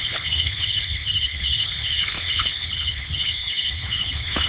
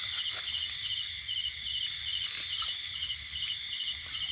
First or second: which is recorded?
second